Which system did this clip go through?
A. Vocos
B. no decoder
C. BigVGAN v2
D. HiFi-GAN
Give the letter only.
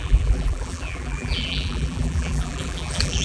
C